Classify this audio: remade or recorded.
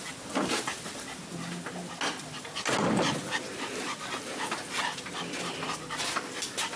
recorded